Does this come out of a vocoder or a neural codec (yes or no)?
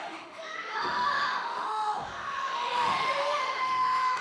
yes